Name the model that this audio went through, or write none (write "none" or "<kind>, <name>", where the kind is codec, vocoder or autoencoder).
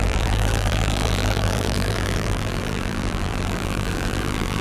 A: vocoder, BigVGAN v2